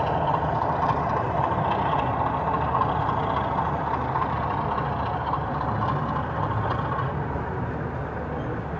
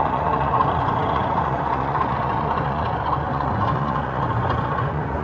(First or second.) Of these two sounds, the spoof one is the second